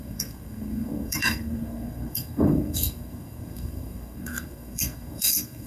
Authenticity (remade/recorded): remade